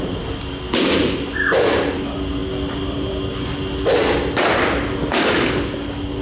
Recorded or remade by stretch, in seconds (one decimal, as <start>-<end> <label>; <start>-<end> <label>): 0.0-6.2 recorded